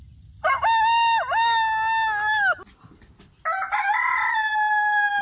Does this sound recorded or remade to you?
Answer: recorded